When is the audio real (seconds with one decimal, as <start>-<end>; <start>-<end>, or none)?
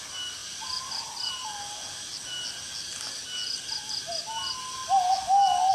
0.0-5.7